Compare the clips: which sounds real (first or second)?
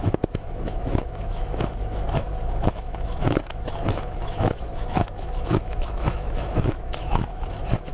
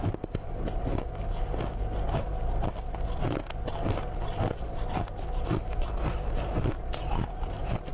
second